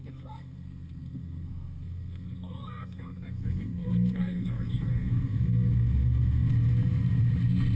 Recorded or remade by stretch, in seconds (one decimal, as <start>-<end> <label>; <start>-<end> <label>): 0.0-6.5 remade; 6.5-7.8 recorded